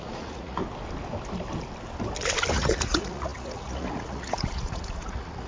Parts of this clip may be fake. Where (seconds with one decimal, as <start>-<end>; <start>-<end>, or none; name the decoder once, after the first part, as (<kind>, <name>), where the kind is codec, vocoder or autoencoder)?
0.0-0.6 (vocoder, Vocos); 2.5-5.5